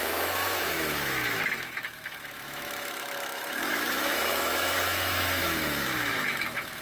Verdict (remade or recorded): remade